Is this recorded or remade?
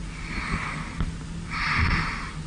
recorded